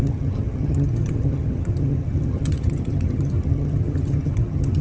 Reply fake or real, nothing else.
fake